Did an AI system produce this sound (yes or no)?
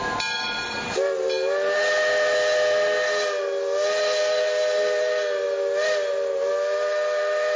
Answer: no